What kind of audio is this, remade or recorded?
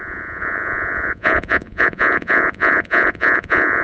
remade